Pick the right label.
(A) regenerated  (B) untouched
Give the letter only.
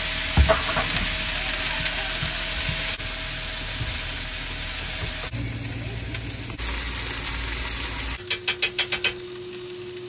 B